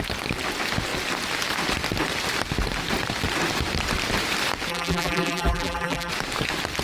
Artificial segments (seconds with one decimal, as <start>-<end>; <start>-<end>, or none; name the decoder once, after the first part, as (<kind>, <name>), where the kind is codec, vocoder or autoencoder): 4.7-6.1 (vocoder, BigVGAN v2)